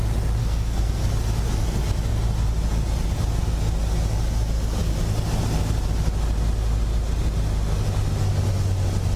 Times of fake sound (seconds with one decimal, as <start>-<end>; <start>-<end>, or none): 0.4-1.1

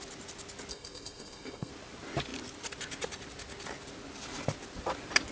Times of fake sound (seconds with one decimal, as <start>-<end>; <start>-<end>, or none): 0.7-1.7

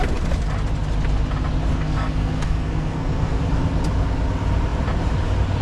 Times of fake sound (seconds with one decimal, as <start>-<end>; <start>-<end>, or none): 1.7-3.4

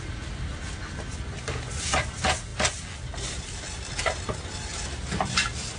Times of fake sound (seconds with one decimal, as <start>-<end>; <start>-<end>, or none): none

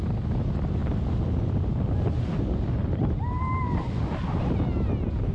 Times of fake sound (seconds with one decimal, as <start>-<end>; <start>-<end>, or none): none